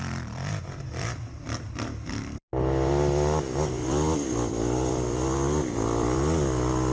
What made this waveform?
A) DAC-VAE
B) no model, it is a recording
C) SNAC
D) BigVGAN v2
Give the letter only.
D